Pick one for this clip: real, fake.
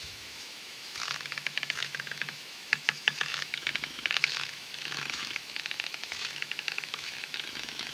fake